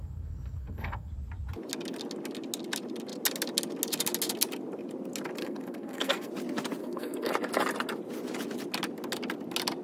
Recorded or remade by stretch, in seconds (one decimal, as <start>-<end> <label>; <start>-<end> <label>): 0.0-1.1 remade; 1.1-5.4 recorded; 5.4-6.3 remade; 6.3-6.8 recorded; 6.8-7.3 remade; 7.3-9.8 recorded